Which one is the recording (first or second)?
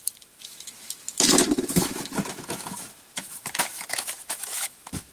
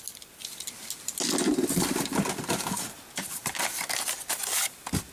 second